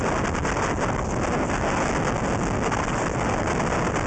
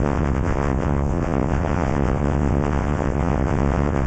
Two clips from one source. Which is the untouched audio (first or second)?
first